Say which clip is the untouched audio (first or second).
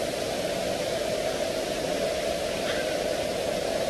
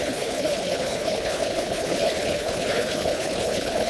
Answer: first